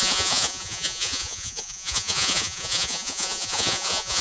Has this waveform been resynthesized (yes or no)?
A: yes